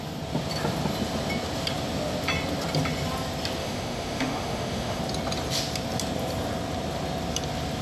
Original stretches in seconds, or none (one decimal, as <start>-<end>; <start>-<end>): 0.0-3.6; 5.0-7.8